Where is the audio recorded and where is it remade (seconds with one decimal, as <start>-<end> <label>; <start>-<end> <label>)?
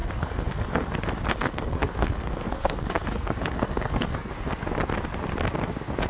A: 0.0-0.9 remade; 0.9-1.3 recorded; 1.3-4.3 remade; 4.3-6.1 recorded